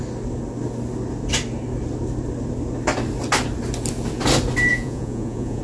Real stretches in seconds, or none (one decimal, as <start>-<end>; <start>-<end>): 0.0-4.7